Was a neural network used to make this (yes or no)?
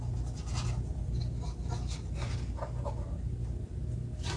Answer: no